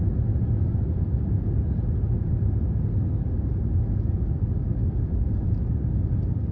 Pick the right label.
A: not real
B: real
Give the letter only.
B